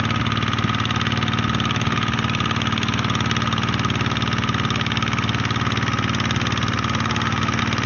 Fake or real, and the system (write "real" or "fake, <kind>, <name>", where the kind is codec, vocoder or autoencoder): real